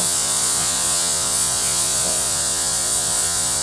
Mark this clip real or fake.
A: fake